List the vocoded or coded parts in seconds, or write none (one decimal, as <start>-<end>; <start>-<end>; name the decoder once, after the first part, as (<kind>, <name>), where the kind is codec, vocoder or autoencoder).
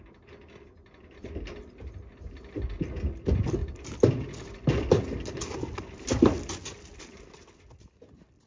none